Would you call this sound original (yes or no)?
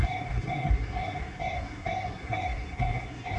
no